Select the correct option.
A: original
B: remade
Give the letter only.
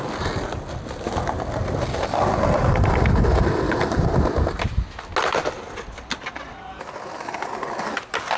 A